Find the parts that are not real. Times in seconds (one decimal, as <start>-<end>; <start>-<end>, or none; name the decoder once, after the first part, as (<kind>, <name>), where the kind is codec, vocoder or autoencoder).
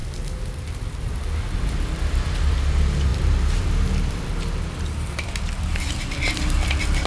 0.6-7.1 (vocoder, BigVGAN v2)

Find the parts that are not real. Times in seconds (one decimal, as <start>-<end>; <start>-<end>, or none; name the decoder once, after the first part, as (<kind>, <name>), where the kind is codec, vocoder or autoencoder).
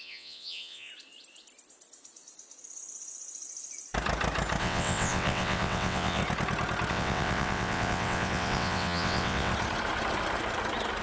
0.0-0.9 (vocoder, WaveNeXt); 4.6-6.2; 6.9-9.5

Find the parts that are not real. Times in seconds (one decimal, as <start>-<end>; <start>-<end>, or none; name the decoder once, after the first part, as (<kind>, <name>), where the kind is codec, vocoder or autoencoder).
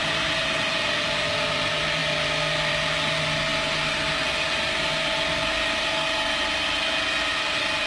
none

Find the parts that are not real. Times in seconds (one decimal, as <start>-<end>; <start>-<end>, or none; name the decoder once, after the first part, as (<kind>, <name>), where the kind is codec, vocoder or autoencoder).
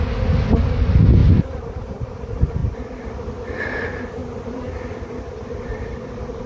1.2-1.8 (vocoder, BigVGAN v2); 2.6-3.1; 4.2-4.7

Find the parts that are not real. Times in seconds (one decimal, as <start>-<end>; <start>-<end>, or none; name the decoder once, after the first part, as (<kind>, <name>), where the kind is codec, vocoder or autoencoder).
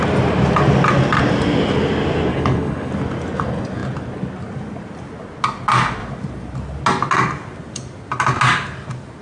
2.3-2.9 (codec, HILCodec)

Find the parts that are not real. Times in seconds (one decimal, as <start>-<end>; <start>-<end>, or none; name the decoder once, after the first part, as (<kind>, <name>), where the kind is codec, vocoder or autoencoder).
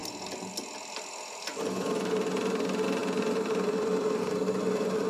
none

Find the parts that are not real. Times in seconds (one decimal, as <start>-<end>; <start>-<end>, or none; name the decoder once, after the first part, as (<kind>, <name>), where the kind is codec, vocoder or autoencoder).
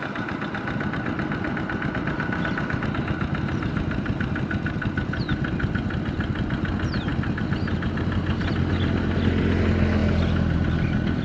none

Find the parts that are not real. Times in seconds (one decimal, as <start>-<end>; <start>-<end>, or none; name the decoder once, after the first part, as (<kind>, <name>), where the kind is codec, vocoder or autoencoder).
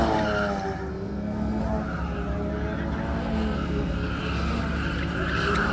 0.9-1.6 (codec, SNAC); 3.2-4.2